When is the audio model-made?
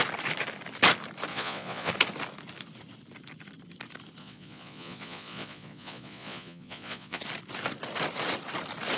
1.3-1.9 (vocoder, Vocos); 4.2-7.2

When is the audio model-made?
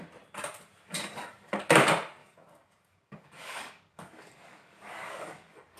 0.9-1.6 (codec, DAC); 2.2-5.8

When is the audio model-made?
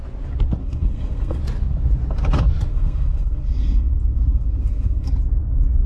0.6-1.4 (codec, SNAC); 2.7-5.1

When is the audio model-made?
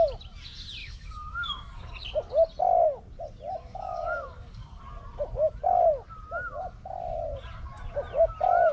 0.8-1.9 (codec, DAC); 3.6-4.8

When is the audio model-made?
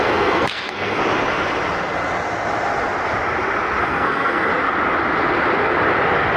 0.0-1.0 (codec, SNAC); 3.8-4.5